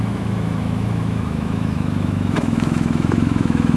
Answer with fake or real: fake